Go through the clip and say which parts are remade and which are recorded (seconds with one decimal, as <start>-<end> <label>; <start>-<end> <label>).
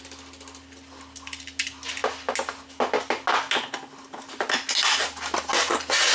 0.0-6.1 recorded